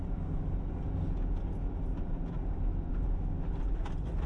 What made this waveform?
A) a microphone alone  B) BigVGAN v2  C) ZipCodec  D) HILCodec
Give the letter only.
A